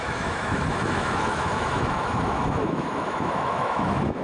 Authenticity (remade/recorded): remade